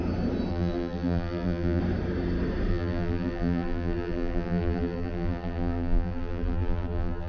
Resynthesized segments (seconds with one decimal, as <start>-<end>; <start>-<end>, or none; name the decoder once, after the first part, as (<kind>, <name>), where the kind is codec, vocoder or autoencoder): 0.5-1.8 (vocoder, BigVGAN v2); 2.7-7.3